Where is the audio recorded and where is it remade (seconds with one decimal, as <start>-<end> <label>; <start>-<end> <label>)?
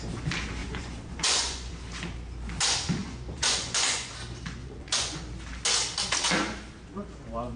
0.0-0.6 recorded; 0.6-1.7 remade; 1.7-3.0 recorded; 3.0-4.1 remade; 4.1-4.6 recorded; 4.6-5.2 remade; 5.2-7.6 recorded